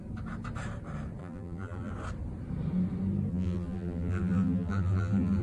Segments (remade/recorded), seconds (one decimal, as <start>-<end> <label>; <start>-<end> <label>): 0.0-1.2 recorded; 1.2-1.9 remade; 1.9-3.3 recorded; 3.3-5.4 remade